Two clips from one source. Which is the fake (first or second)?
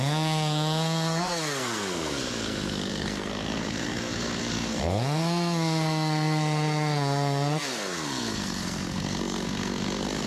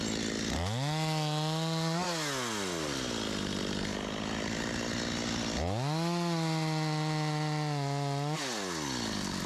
first